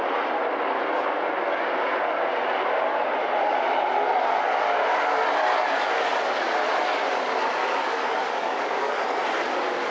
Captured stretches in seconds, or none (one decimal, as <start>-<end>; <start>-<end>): 0.0-7.6; 9.2-9.9